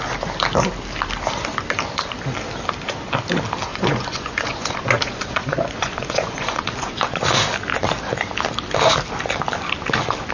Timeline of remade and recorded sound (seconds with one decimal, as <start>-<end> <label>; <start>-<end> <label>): 0.0-3.7 recorded; 3.7-7.2 remade; 7.2-10.3 recorded